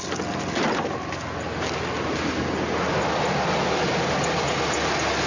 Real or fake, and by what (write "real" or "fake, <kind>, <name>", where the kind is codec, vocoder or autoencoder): real